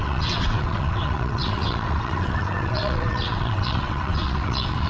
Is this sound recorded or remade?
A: remade